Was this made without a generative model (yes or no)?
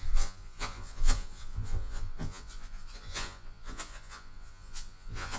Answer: no